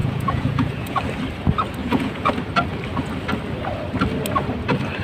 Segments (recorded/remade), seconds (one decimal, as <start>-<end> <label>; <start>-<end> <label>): 0.0-1.0 remade; 1.0-1.8 recorded; 1.8-2.3 remade; 2.3-5.0 recorded